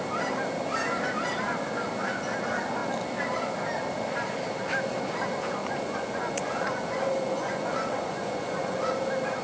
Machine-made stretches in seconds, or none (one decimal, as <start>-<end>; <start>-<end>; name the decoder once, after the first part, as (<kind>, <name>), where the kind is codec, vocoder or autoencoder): 5.6-8.9 (vocoder, Vocos)